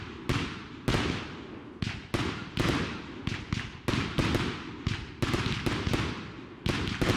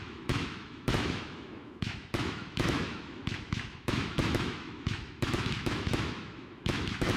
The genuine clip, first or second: first